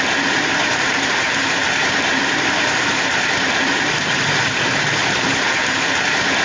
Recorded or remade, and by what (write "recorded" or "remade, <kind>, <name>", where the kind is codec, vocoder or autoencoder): remade, vocoder, BigVGAN v2